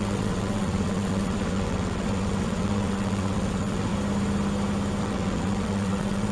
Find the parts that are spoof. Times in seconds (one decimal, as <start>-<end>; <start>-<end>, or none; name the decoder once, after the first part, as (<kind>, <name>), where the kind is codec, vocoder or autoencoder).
0.0-3.9 (vocoder, WaveNeXt); 5.0-6.3